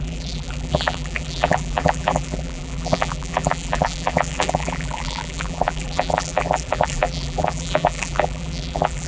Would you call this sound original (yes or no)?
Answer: no